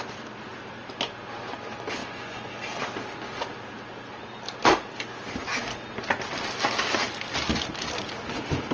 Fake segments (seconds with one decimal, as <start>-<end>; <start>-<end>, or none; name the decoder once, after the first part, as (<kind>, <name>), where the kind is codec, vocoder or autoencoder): 2.0-2.5 (vocoder, Vocos)